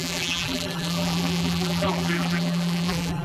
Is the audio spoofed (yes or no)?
yes